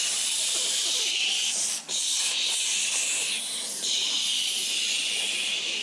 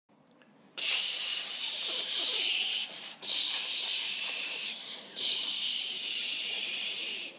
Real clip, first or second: first